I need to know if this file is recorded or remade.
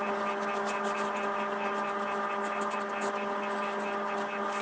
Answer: recorded